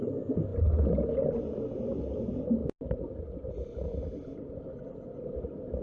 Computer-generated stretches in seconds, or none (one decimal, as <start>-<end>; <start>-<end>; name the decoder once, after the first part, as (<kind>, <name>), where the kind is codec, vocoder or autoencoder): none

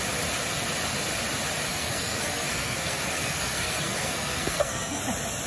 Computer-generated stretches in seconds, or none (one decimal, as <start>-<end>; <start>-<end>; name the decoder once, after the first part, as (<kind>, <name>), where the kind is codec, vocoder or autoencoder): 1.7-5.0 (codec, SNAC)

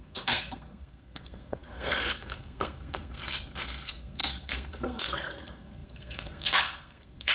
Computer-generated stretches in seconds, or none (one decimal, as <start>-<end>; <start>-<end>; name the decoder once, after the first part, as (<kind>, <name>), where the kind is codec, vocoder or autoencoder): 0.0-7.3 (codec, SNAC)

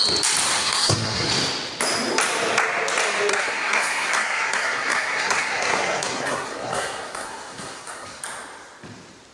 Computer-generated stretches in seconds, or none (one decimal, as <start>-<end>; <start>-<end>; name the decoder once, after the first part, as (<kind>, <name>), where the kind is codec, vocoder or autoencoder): 0.6-1.3 (codec, SNAC); 3.3-8.2

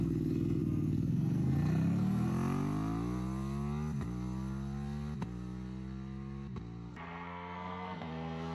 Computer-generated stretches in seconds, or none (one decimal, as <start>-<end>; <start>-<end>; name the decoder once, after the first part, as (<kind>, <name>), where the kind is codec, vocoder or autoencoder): 0.0-2.3 (codec, SNAC); 6.9-8.5

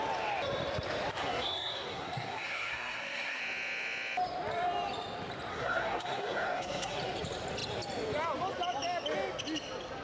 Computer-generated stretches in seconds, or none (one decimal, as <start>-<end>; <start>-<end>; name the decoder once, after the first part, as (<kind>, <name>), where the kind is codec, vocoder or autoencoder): 1.2-3.4 (codec, SNAC); 5.5-7.0